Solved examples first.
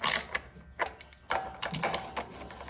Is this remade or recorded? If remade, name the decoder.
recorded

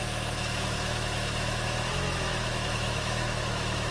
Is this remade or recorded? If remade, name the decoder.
remade, autoencoder, DAC-VAE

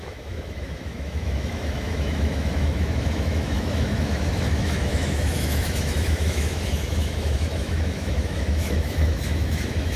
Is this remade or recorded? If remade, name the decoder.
remade, autoencoder, DAC-VAE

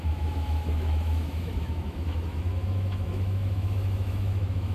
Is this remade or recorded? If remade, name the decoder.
remade, autoencoder, DAC-VAE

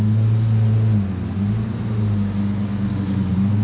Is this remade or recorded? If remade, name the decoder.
recorded